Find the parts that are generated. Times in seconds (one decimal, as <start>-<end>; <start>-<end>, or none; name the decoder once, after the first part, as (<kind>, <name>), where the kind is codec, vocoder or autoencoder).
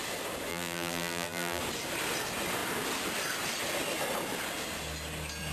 0.5-1.6 (vocoder, BigVGAN v2)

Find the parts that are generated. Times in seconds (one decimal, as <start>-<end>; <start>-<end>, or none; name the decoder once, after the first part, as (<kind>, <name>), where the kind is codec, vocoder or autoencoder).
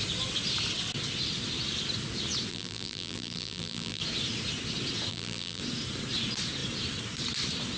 2.5-4.0 (vocoder, BigVGAN v2); 5.1-5.6